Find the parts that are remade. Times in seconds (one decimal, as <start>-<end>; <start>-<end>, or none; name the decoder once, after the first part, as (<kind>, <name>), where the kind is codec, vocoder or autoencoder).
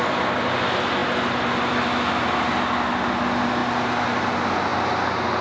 none